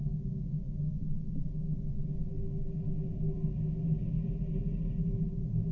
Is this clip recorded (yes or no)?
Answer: yes